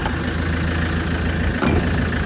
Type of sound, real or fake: real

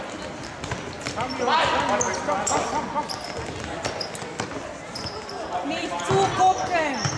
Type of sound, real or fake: real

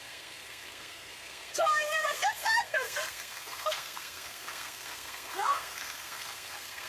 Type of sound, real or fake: fake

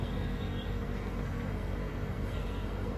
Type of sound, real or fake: fake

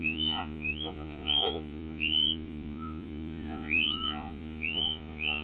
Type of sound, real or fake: fake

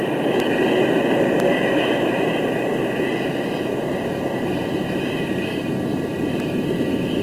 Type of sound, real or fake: fake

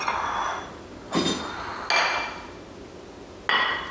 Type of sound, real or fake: real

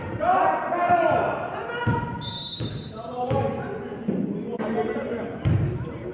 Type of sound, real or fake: real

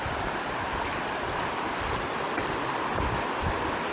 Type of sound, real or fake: real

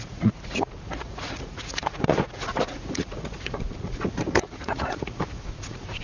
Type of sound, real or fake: fake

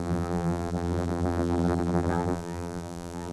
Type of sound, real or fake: fake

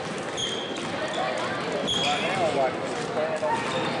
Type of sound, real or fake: real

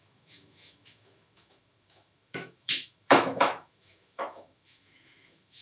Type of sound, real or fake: fake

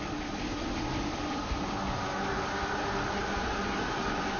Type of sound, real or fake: real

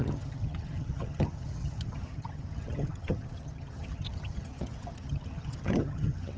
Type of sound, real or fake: fake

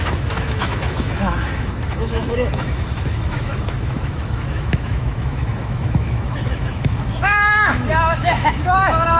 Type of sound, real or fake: fake